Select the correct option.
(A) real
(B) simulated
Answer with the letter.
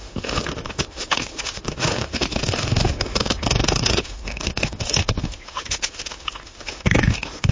B